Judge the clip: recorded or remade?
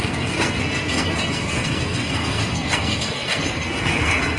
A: remade